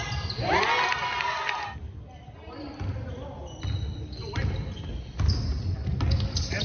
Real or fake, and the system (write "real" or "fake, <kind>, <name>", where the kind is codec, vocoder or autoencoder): real